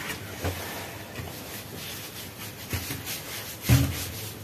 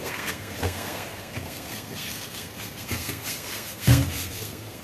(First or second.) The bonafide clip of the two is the first